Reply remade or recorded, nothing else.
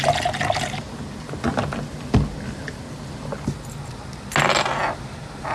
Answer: recorded